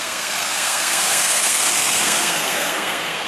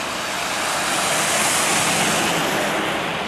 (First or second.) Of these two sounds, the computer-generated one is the first